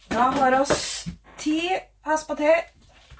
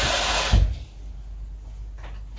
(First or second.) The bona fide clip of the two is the second